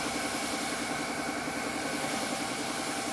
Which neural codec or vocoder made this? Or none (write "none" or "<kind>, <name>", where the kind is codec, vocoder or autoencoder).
none